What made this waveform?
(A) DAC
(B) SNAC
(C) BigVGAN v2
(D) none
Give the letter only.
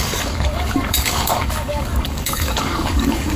A